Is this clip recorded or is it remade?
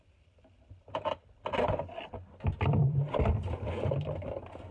remade